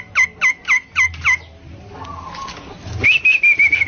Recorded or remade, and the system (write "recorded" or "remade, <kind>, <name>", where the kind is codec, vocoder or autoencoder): recorded